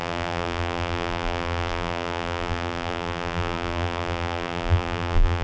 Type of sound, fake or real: fake